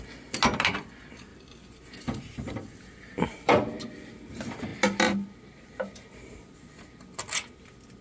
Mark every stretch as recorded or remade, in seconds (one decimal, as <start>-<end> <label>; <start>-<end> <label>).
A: 0.0-1.3 recorded; 1.3-3.8 remade; 3.8-8.0 recorded